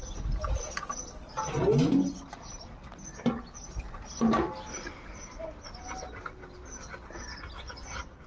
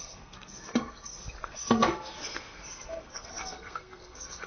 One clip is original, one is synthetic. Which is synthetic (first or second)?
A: second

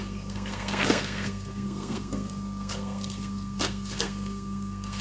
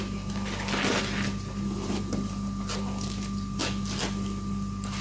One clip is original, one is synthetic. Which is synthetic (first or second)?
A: first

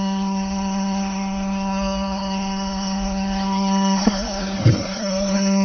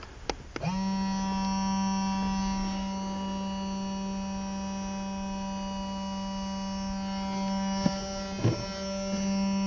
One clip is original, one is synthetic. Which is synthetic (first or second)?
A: first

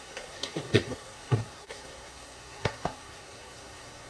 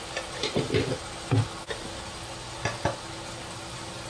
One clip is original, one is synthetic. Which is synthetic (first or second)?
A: first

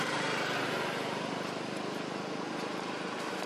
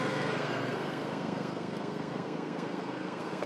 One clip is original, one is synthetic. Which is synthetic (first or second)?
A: second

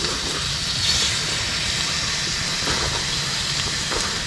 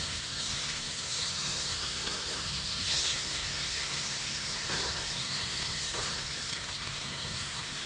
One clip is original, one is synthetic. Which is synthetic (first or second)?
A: second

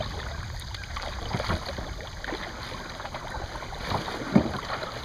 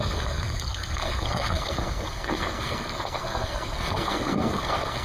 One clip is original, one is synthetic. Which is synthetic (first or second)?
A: second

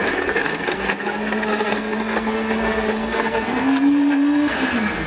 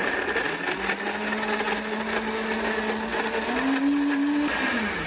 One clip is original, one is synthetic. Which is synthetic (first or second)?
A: first